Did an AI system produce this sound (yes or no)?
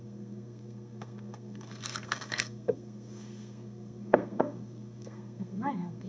yes